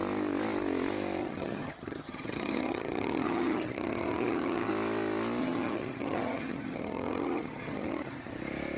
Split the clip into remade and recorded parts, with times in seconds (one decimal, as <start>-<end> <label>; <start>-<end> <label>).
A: 0.0-1.2 recorded; 1.2-4.7 remade; 4.7-5.4 recorded; 5.4-8.3 remade; 8.3-8.8 recorded